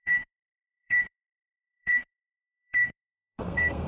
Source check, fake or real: fake